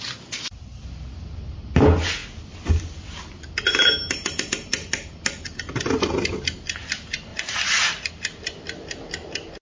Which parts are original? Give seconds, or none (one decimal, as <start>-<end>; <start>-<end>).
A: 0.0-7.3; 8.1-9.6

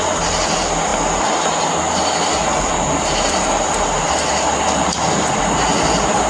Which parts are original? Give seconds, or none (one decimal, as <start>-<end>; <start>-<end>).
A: 0.0-6.3

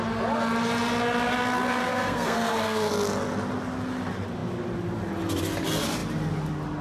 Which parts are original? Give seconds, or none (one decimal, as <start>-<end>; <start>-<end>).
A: 0.0-1.8; 2.9-6.8

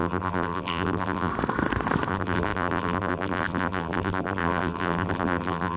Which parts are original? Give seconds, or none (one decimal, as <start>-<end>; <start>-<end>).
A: 1.3-2.1

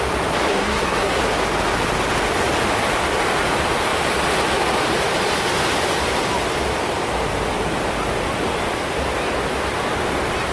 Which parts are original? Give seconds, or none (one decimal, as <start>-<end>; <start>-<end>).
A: 0.0-0.5; 1.2-10.5